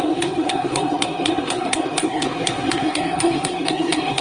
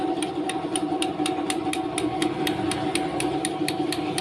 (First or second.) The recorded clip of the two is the second